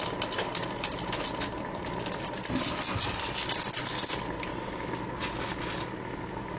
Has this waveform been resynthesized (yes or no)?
no